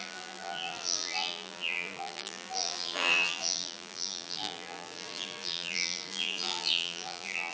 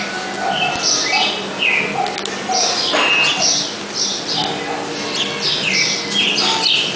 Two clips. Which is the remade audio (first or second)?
first